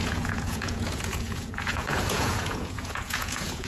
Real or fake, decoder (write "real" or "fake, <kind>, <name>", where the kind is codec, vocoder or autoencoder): fake, vocoder, Vocos